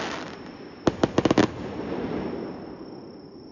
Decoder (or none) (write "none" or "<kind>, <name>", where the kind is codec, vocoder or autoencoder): none